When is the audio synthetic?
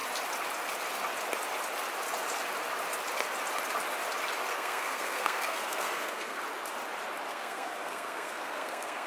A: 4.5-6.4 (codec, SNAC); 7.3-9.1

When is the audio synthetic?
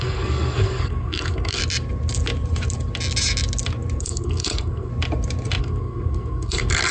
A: 0.0-1.6 (codec, SNAC); 4.0-4.9; 5.6-6.9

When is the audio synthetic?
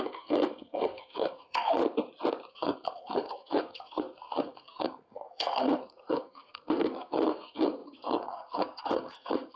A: 0.0-1.8 (codec, SNAC); 2.5-9.6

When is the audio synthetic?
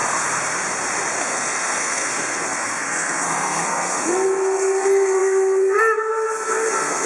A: 1.2-7.1 (codec, SNAC)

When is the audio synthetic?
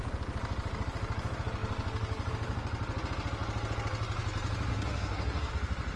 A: 4.7-5.5 (codec, SNAC)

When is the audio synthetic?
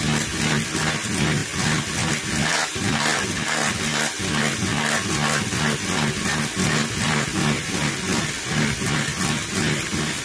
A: none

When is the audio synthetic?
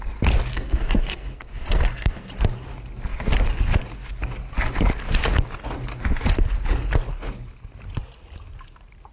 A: 0.5-2.3 (codec, SNAC)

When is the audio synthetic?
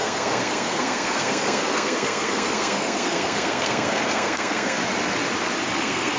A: 0.0-4.8 (codec, SNAC); 5.8-6.2